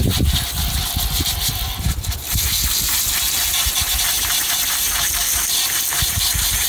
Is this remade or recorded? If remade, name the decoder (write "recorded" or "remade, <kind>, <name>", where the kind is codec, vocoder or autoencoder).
recorded